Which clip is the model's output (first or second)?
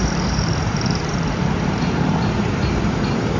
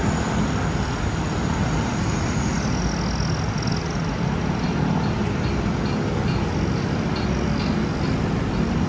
first